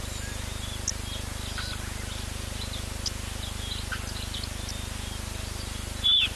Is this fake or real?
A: real